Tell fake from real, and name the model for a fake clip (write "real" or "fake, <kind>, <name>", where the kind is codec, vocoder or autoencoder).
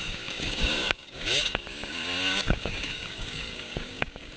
fake, codec, DAC